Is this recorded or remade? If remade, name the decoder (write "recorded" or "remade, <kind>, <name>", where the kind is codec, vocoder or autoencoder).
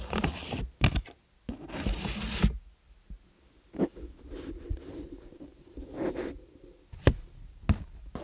recorded